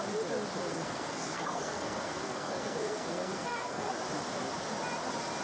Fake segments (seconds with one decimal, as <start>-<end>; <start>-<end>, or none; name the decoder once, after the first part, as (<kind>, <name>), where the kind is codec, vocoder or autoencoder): 0.7-3.9 (codec, SNAC)